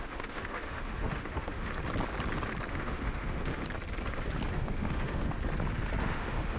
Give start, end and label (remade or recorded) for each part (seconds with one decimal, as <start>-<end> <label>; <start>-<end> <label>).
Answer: 0.0-1.7 remade; 1.7-2.7 recorded; 2.7-3.6 remade; 3.6-4.5 recorded; 4.5-5.4 remade; 5.4-6.0 recorded; 6.0-6.6 remade